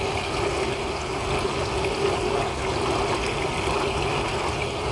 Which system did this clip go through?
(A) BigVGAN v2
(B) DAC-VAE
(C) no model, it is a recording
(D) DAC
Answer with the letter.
C